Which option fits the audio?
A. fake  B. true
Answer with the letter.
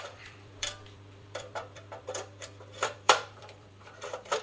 A